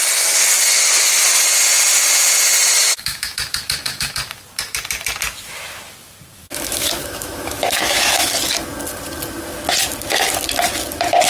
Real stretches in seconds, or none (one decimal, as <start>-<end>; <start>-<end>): 0.0-2.8; 4.1-6.4; 8.3-11.3